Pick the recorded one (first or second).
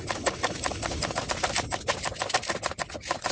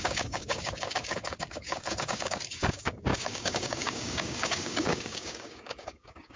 first